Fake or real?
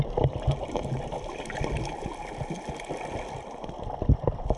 real